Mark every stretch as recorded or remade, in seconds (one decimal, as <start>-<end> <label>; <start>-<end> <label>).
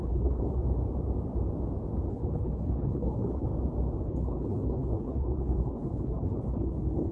0.0-0.6 remade; 0.6-2.1 recorded; 2.1-3.5 remade; 3.5-4.0 recorded; 4.0-7.1 remade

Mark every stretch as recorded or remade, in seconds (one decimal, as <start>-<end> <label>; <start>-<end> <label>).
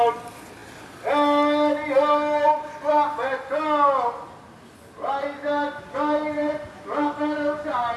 0.0-8.0 recorded